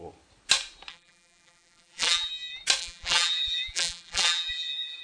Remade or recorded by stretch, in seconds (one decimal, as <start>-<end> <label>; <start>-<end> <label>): 0.0-0.9 recorded; 0.9-2.3 remade; 2.3-2.8 recorded; 2.8-5.0 remade